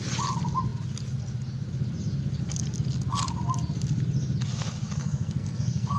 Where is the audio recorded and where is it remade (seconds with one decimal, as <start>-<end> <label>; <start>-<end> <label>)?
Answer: 0.0-5.0 recorded; 5.0-6.0 remade